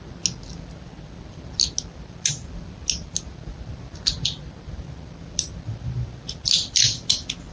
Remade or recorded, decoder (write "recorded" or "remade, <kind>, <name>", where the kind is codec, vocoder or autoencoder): recorded